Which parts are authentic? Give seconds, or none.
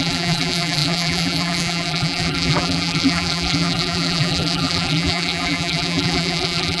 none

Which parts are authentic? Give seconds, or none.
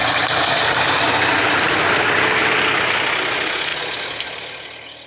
0.0-5.1